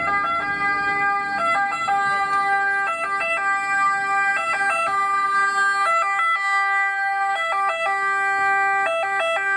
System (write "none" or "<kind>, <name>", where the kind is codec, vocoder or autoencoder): none